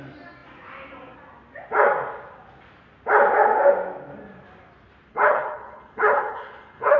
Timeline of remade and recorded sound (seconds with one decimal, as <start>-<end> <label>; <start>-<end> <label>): 0.0-5.1 recorded; 5.1-7.0 remade